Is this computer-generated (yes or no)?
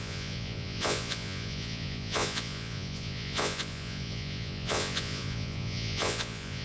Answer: yes